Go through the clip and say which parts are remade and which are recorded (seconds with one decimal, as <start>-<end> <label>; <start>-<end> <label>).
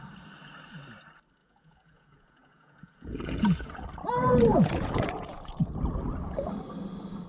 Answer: 0.0-1.4 recorded; 1.4-3.8 remade; 3.8-4.5 recorded; 4.5-5.7 remade; 5.7-7.3 recorded